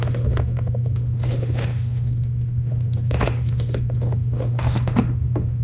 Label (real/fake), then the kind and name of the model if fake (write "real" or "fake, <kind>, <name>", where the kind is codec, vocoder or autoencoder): fake, autoencoder, DAC-VAE